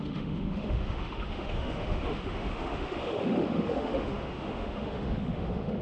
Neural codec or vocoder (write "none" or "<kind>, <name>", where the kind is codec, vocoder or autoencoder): autoencoder, DAC-VAE